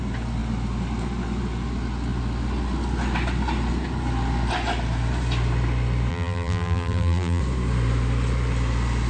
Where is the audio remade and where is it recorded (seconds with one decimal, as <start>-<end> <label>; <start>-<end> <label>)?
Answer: 0.0-6.1 recorded; 6.1-7.4 remade; 7.4-9.1 recorded